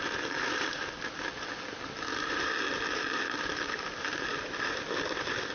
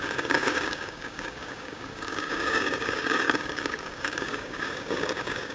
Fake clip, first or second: second